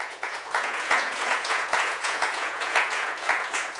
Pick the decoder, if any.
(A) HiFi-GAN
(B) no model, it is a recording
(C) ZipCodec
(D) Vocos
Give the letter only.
D